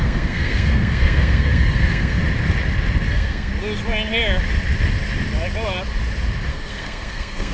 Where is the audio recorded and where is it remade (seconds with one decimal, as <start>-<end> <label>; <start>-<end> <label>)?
0.0-2.2 remade; 2.2-3.1 recorded; 3.1-3.5 remade; 3.5-6.5 recorded; 6.5-7.5 remade